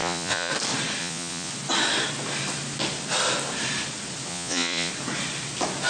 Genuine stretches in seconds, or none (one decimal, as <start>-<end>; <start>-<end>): 0.5-1.0; 1.5-4.3; 4.9-5.9